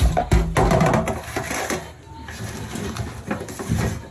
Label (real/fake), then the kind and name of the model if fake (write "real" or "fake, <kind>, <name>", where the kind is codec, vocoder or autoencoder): real